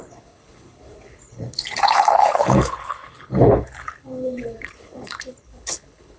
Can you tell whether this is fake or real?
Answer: fake